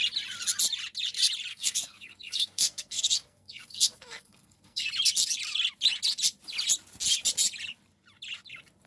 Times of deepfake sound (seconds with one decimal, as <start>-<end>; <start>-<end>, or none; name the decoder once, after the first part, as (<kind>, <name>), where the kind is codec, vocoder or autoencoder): 1.5-4.9 (codec, SNAC)